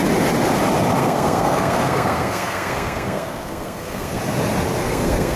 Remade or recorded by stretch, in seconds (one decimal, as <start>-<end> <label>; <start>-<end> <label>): 0.0-1.0 recorded; 1.0-4.2 remade; 4.2-4.8 recorded; 4.8-5.4 remade